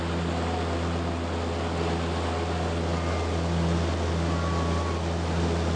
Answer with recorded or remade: recorded